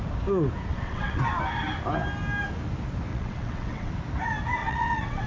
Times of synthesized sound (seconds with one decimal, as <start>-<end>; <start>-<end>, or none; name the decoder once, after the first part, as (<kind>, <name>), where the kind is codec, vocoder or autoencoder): 0.7-1.2 (vocoder, WaveNeXt); 3.1-3.9; 4.6-5.3

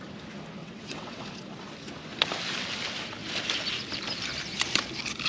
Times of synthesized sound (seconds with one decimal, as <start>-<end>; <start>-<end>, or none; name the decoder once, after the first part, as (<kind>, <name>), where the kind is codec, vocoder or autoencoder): 0.6-1.2 (vocoder, WaveNeXt)

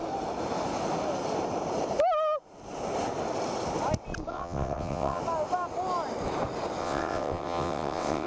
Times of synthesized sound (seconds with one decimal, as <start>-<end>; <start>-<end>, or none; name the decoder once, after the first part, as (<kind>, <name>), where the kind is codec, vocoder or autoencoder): 4.3-5.2 (vocoder, WaveNeXt); 6.8-8.3

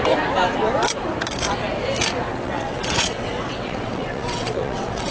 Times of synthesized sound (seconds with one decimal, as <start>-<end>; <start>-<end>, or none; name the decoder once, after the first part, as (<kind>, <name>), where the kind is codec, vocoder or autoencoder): 2.3-5.1 (vocoder, WaveNeXt)

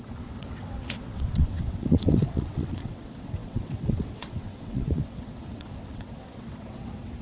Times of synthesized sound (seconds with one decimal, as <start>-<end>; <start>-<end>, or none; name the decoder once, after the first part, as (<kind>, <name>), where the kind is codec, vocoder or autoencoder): 0.0-7.2 (vocoder, WaveNeXt)

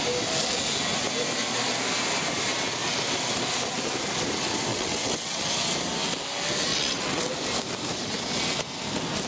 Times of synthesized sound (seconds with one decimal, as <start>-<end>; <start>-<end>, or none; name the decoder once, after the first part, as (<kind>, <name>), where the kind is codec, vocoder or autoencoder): 4.7-5.5 (vocoder, WaveNeXt); 6.7-7.2